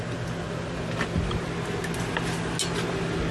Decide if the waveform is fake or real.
real